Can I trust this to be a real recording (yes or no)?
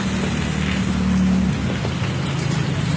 yes